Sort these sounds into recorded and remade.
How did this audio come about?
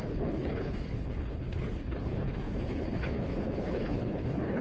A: remade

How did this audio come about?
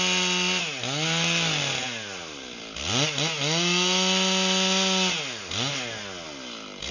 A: recorded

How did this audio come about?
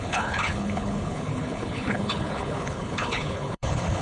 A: remade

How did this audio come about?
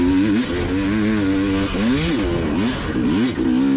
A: recorded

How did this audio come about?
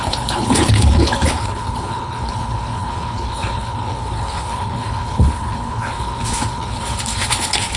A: remade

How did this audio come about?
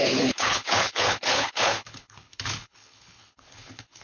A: remade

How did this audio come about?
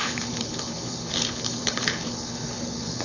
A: remade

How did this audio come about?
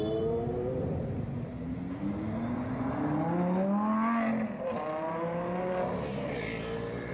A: recorded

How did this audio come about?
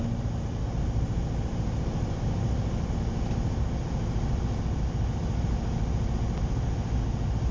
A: recorded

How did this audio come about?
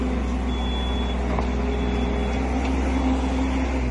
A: recorded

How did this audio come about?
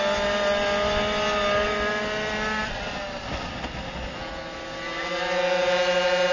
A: recorded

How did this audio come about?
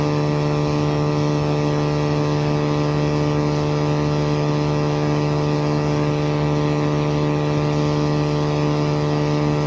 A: recorded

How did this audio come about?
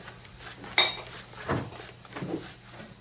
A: recorded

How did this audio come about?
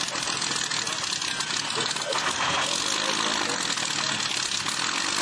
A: recorded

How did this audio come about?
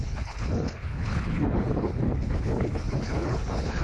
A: remade